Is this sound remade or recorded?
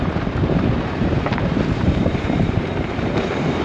remade